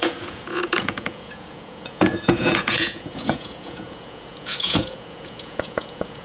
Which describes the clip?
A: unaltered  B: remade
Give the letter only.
B